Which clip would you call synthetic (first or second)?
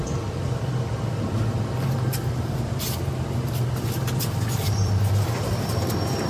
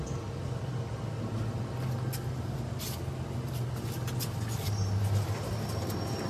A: first